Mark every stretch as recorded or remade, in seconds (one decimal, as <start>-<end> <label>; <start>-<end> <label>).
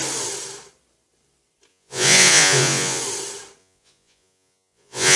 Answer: 0.0-1.7 recorded; 1.7-3.0 remade; 3.0-3.6 recorded; 3.6-5.2 remade